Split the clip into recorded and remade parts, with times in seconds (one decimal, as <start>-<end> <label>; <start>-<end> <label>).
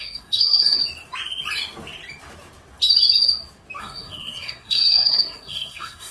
0.0-0.8 remade; 0.8-3.8 recorded; 3.8-6.1 remade